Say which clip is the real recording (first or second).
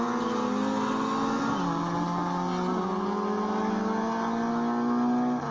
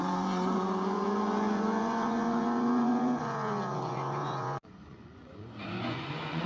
first